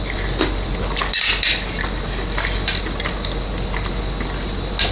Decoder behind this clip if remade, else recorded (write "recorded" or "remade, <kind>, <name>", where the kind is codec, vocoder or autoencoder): recorded